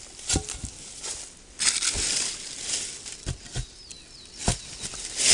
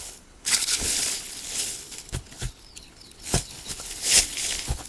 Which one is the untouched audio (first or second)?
first